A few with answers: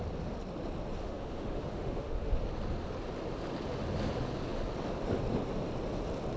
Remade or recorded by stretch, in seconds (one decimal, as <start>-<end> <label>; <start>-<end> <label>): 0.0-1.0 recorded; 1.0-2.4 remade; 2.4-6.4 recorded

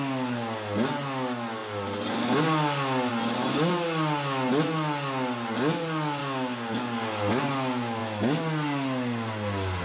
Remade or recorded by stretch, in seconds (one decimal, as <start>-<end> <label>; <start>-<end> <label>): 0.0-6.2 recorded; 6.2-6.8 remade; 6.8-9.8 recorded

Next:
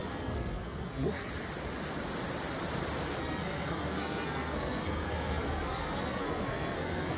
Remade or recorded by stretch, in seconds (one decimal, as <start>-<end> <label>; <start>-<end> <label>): 0.0-1.3 remade; 1.3-3.2 recorded; 3.2-7.2 remade

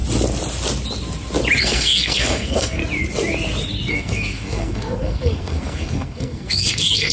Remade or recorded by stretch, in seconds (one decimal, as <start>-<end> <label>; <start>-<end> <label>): 0.0-1.6 recorded; 1.6-2.8 remade; 2.8-3.9 recorded; 3.9-7.1 remade

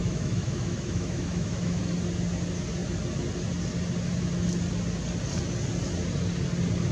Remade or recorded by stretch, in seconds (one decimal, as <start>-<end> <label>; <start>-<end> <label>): 0.0-1.8 remade; 1.8-6.9 recorded

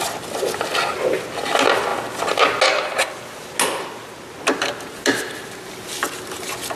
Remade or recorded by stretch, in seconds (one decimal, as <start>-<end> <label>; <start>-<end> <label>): 0.0-6.8 recorded